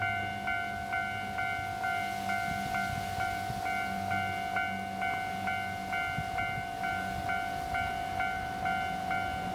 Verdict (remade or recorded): recorded